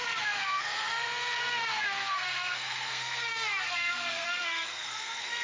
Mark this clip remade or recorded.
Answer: remade